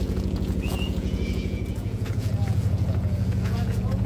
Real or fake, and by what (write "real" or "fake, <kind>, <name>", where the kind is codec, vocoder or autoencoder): fake, vocoder, Vocos